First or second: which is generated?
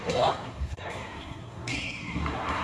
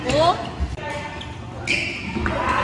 first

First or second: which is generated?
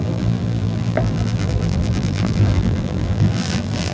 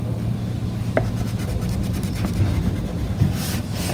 first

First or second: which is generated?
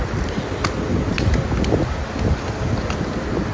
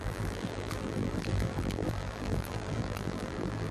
second